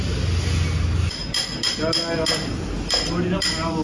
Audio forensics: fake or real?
real